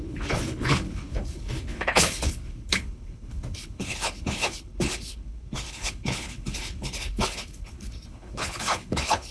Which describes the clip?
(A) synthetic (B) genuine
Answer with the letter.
A